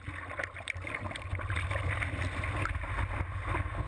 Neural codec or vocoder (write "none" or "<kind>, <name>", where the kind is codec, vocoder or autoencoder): none